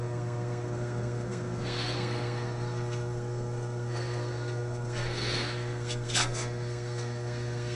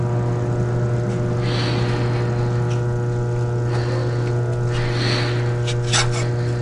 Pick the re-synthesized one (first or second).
first